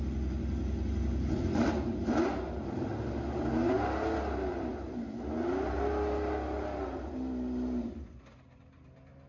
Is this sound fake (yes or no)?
no